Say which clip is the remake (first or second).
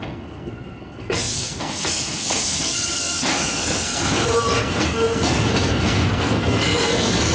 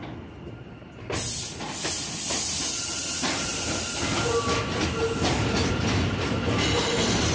first